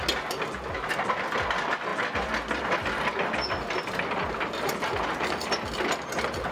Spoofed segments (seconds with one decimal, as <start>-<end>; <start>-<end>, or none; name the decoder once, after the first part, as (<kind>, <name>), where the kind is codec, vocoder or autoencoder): none